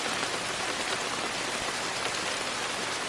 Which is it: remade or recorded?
recorded